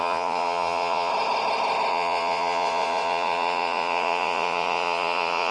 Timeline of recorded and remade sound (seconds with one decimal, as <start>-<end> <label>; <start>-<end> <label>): 0.0-1.1 remade; 1.1-1.9 recorded; 1.9-5.5 remade